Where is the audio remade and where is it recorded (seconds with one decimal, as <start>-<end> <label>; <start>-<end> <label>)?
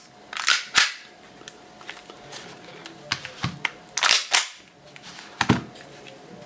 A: 0.0-6.5 recorded